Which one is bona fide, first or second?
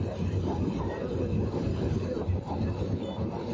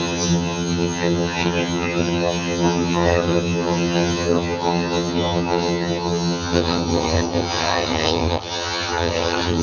first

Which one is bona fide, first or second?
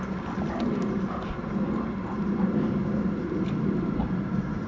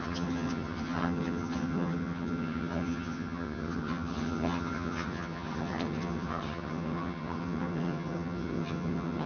first